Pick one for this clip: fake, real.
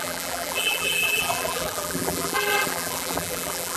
fake